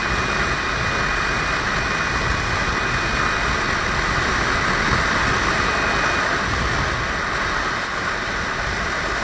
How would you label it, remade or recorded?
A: recorded